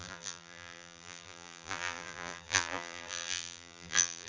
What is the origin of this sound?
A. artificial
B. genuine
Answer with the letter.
A